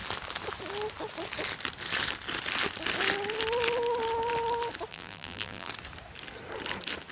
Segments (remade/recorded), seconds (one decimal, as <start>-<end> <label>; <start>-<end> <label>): 0.0-4.9 recorded; 4.9-5.7 remade; 5.7-7.1 recorded

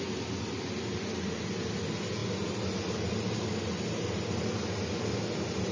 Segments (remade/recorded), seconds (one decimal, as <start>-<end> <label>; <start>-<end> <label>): 0.0-5.7 recorded

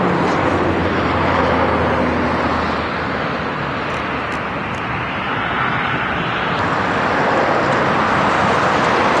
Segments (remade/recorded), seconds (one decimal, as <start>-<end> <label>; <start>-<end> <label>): 0.0-0.8 recorded; 0.8-1.4 remade; 1.4-9.2 recorded